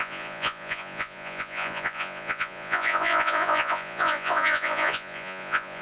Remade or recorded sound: remade